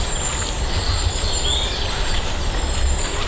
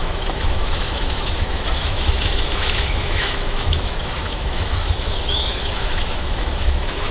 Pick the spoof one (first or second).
second